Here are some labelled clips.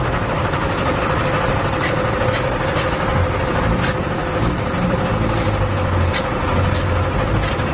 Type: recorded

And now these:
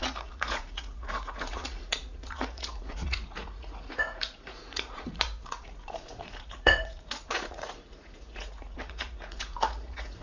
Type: remade